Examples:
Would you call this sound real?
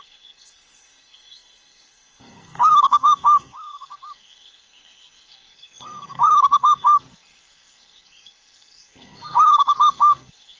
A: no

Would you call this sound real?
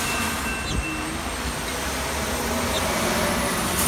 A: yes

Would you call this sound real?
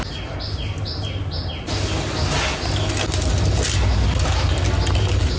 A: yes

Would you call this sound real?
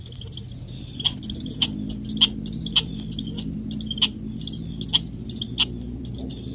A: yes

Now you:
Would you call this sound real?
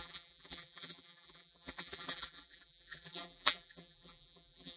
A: no